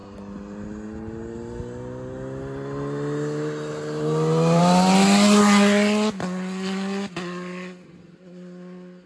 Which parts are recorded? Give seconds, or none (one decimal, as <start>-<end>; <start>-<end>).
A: 0.0-9.1